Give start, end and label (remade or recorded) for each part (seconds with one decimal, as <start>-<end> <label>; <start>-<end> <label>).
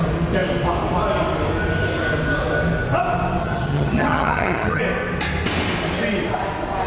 0.0-3.4 recorded; 3.4-4.8 remade; 4.8-6.9 recorded